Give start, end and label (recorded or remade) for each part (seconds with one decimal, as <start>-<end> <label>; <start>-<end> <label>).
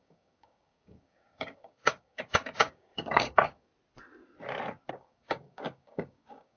0.0-3.7 remade; 3.7-4.9 recorded; 4.9-6.6 remade